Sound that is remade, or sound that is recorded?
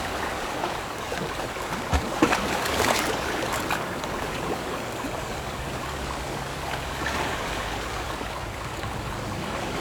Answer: remade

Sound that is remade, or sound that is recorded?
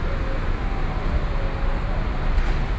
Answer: recorded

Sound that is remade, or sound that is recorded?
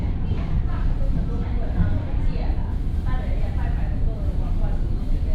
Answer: recorded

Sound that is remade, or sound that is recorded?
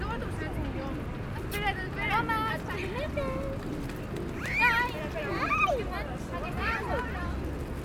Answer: recorded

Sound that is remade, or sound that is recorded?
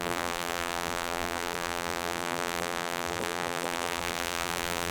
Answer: remade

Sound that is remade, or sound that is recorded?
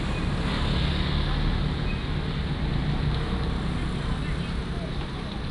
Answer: recorded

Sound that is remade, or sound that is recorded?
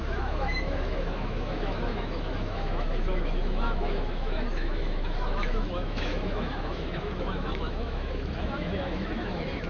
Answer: remade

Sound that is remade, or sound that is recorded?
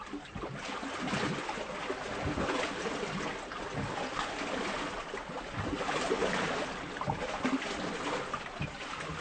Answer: recorded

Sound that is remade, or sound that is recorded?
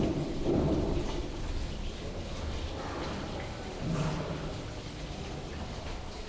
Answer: recorded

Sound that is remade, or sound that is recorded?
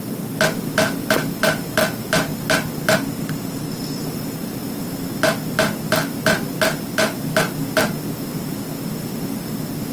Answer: recorded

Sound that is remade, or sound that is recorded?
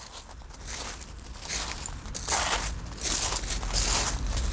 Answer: recorded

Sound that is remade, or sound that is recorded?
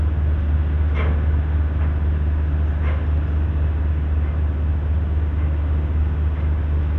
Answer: recorded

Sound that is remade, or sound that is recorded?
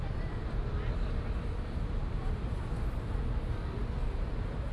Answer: recorded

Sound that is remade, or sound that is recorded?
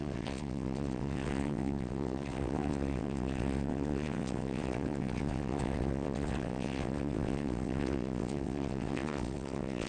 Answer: remade